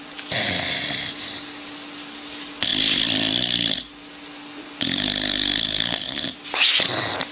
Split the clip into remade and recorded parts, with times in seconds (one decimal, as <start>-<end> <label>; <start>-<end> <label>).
0.0-7.3 recorded